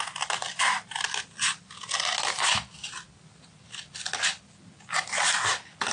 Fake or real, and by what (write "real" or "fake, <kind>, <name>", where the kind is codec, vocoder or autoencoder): real